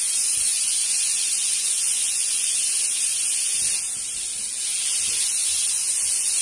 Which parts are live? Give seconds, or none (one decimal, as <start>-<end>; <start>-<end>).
2.7-6.4